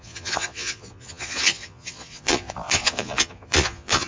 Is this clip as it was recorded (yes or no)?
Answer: no